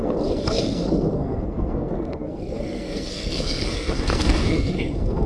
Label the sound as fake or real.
fake